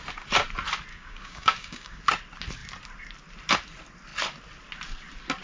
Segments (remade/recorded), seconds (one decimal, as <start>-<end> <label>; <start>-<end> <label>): 0.0-0.9 recorded; 0.9-2.0 remade; 2.0-5.4 recorded